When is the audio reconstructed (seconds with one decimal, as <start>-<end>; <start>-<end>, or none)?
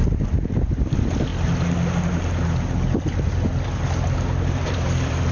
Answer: 0.5-1.3; 4.5-5.3